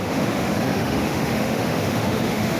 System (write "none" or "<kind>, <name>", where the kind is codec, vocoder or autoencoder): autoencoder, DAC-VAE